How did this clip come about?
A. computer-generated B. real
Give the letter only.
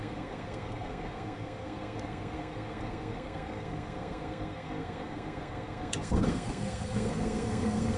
A